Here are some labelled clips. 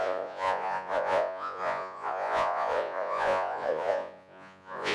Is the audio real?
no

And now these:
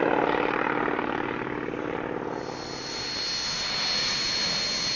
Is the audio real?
yes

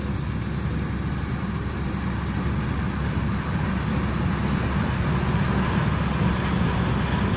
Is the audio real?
yes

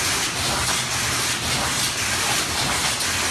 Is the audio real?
yes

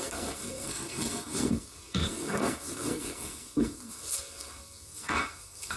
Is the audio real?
no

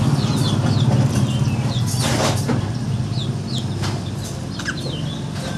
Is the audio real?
yes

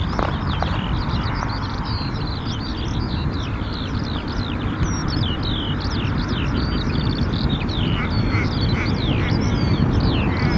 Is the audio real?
yes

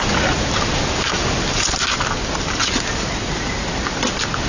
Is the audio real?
yes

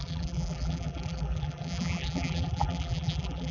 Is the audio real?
no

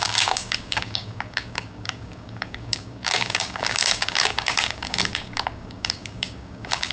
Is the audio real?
no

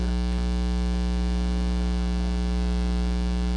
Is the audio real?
yes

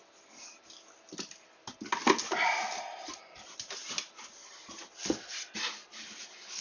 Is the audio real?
yes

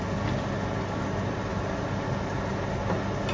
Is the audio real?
yes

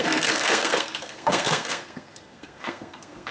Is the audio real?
no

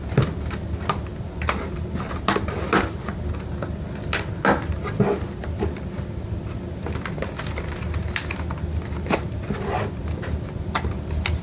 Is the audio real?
yes